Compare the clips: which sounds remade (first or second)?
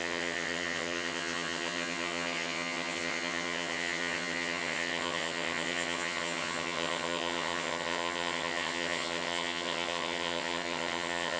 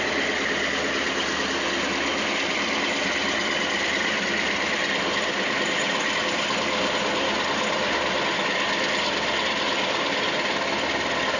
first